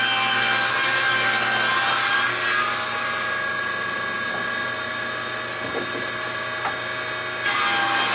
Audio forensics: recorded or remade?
recorded